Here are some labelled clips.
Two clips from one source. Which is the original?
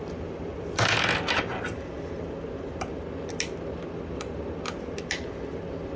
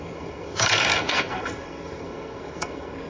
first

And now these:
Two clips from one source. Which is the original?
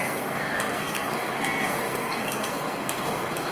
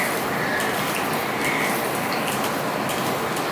second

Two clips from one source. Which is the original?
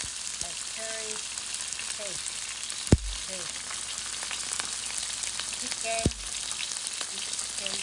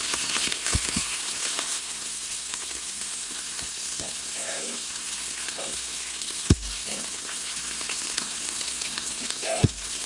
first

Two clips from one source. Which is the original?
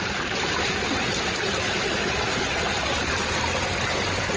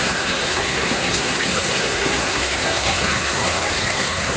first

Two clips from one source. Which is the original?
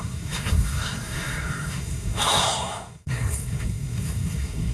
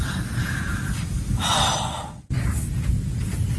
second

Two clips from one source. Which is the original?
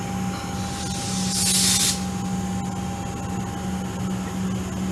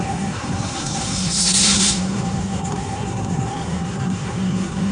first